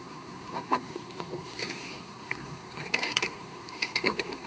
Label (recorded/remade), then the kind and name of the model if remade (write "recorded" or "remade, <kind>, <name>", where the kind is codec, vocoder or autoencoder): remade, codec, SNAC